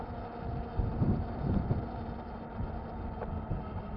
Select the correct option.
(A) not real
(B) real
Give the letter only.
B